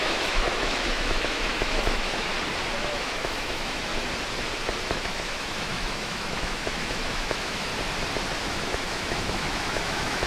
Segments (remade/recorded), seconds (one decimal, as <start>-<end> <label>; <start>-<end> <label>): 0.0-2.3 remade; 2.3-2.8 recorded; 2.8-3.9 remade; 3.9-4.9 recorded; 4.9-7.7 remade; 7.7-8.4 recorded; 8.4-10.3 remade